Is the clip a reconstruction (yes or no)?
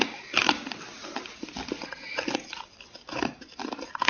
no